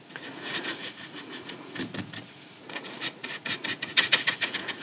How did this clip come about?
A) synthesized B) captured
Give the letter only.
A